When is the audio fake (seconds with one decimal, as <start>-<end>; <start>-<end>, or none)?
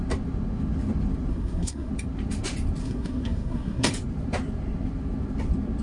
1.3-1.9; 2.8-3.9